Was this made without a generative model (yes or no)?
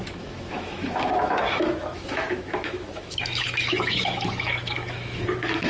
no